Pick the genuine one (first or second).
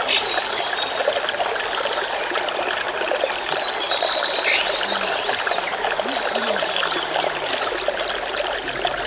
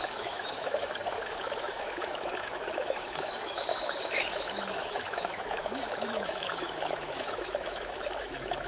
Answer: first